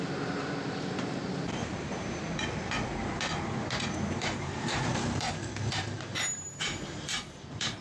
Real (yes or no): no